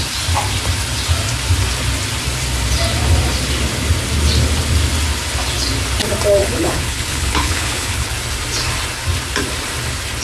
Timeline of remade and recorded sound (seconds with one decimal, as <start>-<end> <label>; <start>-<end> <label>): 0.0-6.4 recorded; 6.4-8.1 remade; 8.1-10.2 recorded